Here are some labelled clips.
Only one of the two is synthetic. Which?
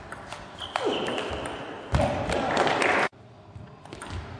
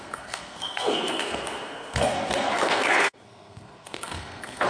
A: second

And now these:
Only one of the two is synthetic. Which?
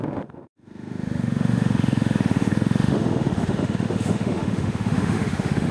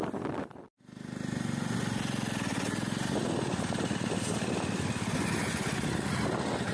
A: first